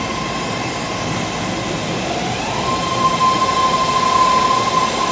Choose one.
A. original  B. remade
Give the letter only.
A